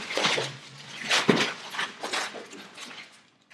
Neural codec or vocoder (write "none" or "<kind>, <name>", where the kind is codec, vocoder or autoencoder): vocoder, Vocos